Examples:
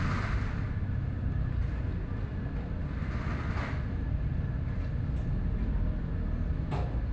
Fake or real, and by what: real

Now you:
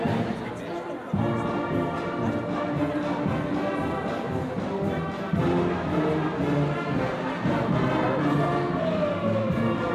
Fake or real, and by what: real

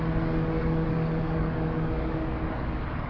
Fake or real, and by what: fake, codec, DAC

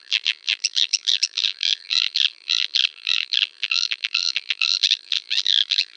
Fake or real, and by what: fake, vocoder, BigVGAN v2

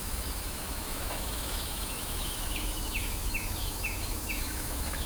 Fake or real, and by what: fake, autoencoder, DAC-VAE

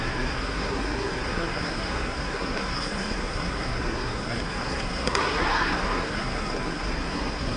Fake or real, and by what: fake, codec, SNAC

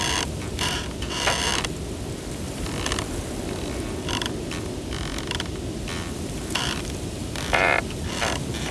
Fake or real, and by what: fake, vocoder, BigVGAN v2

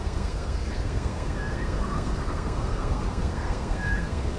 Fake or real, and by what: fake, codec, SNAC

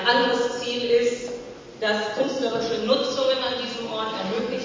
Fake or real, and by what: real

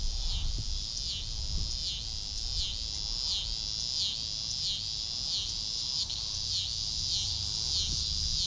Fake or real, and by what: real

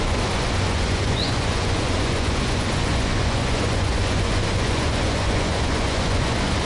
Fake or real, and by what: fake, vocoder, Vocos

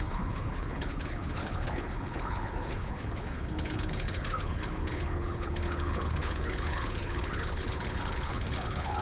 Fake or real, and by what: fake, codec, HILCodec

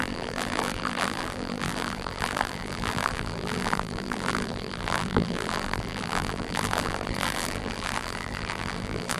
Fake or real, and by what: fake, vocoder, BigVGAN v2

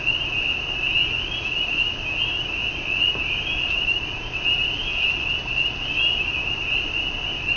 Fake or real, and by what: real